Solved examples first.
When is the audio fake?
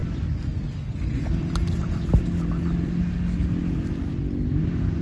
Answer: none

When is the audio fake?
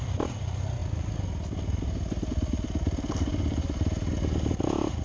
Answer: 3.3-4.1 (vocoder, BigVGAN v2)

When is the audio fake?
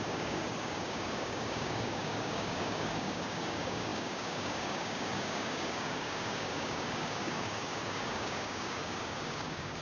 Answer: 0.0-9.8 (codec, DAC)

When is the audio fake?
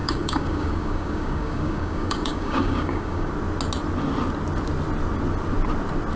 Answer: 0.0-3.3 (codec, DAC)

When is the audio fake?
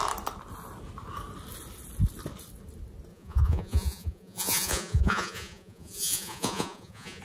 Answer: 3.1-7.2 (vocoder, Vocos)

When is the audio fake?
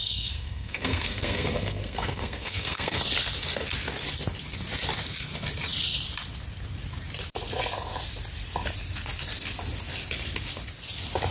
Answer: 0.0-3.0 (codec, SNAC)